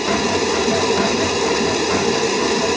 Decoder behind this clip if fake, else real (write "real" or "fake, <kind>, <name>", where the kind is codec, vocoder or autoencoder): real